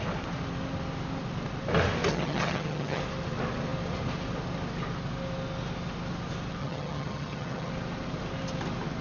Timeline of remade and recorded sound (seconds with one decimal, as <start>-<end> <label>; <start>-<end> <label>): 0.0-2.1 recorded; 2.1-3.0 remade; 3.0-6.6 recorded; 6.6-7.7 remade; 7.7-9.0 recorded